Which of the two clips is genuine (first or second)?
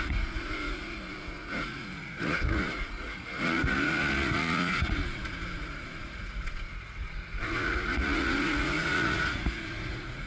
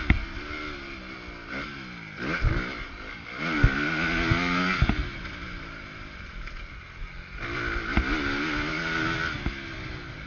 second